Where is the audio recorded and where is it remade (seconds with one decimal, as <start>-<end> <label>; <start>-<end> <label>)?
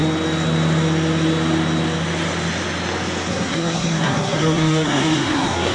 0.0-3.3 recorded; 3.3-5.7 remade